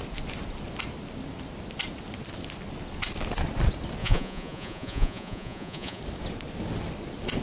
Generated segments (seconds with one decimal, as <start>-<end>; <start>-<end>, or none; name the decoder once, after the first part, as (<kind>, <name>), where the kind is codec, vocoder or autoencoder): 4.0-6.0 (vocoder, Vocos)